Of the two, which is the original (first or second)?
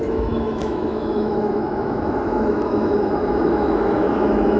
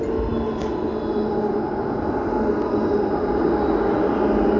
second